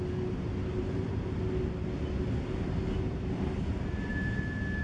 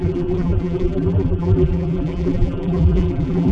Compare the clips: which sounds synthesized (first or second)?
second